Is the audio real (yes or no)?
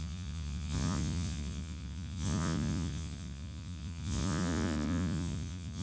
no